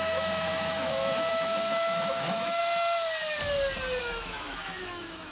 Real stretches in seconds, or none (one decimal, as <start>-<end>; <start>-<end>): 2.6-4.0